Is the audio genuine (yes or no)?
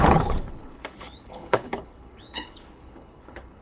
no